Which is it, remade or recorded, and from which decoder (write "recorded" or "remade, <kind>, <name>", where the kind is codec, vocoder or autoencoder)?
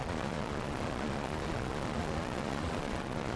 remade, vocoder, Vocos